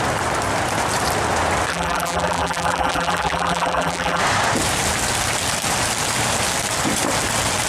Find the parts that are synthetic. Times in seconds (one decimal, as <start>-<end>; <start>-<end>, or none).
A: 1.7-4.2